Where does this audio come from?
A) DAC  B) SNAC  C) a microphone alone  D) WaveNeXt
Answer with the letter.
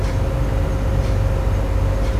C